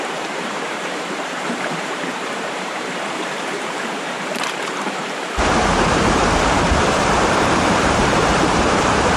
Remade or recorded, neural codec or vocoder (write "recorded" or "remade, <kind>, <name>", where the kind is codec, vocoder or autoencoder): remade, vocoder, BigVGAN v2